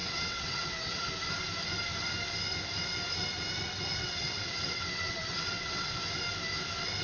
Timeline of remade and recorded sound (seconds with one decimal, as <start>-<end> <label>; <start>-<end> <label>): 0.0-1.1 remade; 1.1-4.0 recorded; 4.0-6.0 remade; 6.0-7.0 recorded